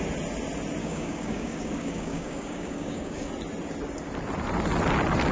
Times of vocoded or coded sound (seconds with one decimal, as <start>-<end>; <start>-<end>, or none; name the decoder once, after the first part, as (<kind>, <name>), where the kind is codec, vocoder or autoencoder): 0.8-3.3 (codec, DAC)